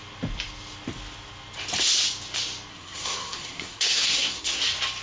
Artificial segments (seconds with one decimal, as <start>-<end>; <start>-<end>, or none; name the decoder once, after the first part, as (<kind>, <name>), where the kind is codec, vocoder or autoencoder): 2.7-4.6 (codec, SNAC)